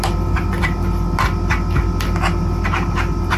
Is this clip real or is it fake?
real